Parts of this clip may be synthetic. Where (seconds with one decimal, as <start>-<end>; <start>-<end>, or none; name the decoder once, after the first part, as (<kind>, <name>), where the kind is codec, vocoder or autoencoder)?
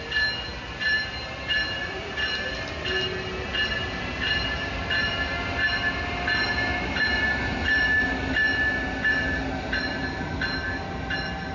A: 0.5-2.4 (vocoder, BigVGAN v2)